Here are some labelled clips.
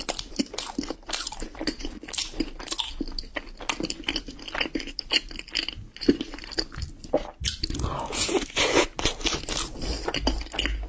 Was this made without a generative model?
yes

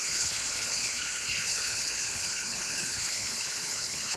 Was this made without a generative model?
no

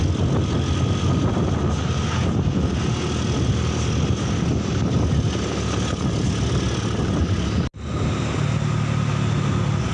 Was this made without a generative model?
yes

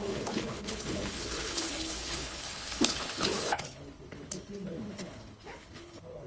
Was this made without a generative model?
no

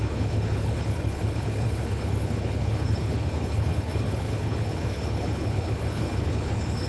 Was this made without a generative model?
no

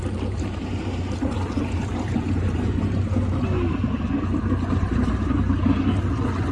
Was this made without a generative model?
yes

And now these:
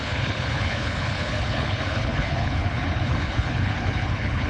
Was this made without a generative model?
no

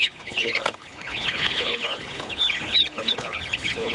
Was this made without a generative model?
no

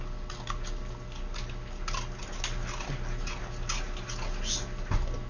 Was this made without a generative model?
yes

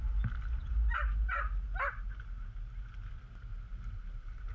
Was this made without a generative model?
yes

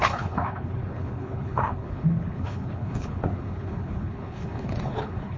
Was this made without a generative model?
no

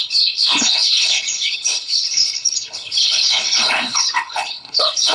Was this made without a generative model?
no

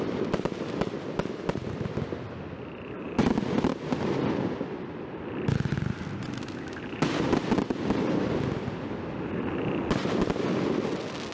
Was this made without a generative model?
yes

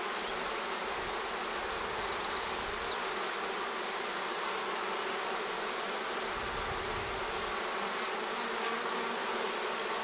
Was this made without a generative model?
yes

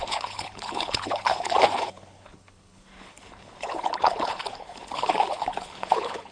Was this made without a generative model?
no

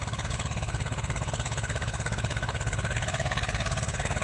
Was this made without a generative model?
no